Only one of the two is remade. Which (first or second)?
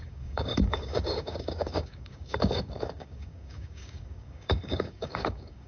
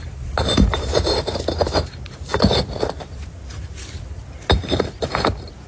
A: first